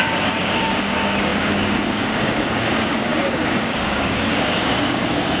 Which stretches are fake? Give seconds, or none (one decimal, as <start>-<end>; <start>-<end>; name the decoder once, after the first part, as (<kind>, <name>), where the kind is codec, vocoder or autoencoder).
0.0-5.4 (codec, DAC)